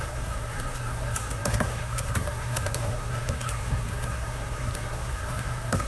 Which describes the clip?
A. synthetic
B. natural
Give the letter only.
A